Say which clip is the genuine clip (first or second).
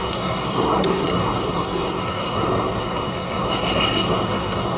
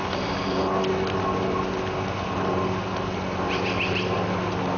second